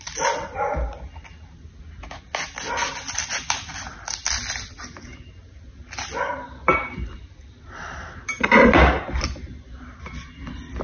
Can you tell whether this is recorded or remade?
recorded